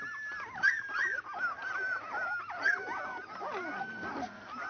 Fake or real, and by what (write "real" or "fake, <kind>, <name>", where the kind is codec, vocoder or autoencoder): real